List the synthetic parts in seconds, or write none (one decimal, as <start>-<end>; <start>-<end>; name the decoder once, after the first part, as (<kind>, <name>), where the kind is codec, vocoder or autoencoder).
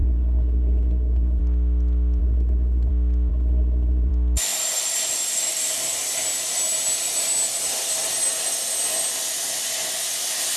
0.0-1.4 (codec, SNAC); 2.2-2.9; 3.3-4.1